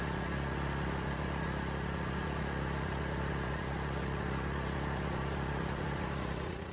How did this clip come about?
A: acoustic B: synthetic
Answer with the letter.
B